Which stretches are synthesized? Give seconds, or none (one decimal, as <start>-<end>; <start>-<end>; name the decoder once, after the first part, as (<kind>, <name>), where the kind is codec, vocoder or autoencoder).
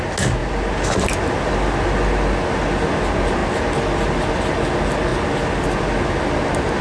none